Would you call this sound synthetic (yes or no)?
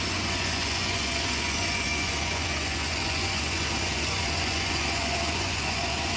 yes